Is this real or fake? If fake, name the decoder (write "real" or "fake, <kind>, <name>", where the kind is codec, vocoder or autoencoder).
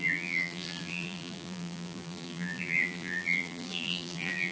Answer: fake, vocoder, BigVGAN v2